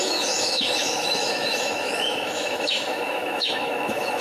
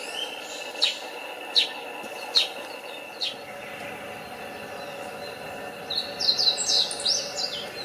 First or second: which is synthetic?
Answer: first